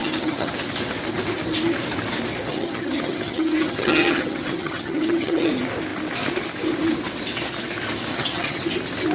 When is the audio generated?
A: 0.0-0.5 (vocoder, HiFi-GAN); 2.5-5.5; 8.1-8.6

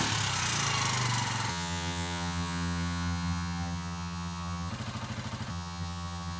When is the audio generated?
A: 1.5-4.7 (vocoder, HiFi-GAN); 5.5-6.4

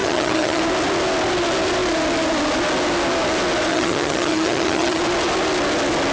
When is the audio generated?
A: 0.0-0.6 (vocoder, HiFi-GAN); 3.7-5.0